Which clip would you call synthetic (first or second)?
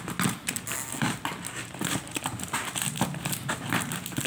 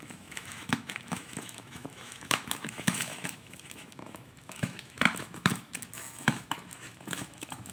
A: second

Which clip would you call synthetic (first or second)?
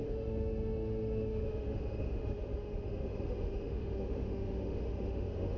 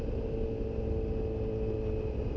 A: first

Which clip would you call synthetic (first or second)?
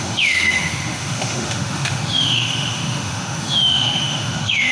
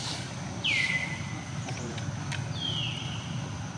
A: first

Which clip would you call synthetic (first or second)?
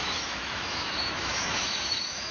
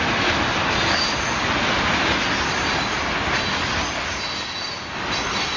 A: first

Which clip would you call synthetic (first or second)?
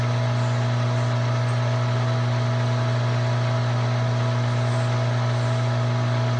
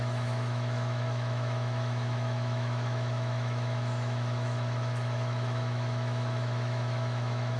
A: second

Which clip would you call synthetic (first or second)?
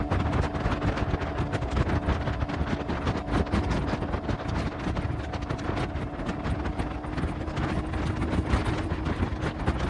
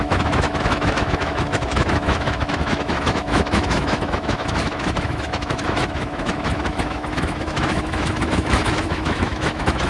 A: second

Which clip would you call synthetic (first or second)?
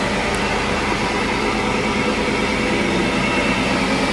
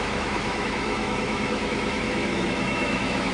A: second